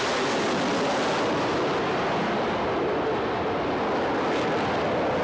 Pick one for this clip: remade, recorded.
recorded